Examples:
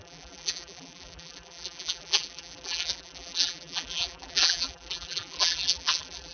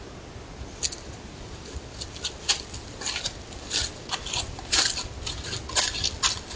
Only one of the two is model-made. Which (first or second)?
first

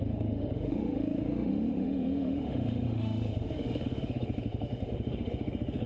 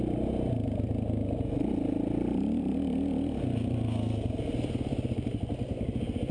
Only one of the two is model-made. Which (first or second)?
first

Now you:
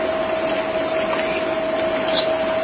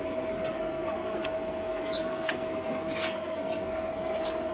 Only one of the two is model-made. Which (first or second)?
second